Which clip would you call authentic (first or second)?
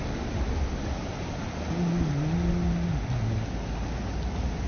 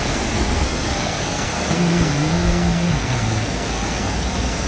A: first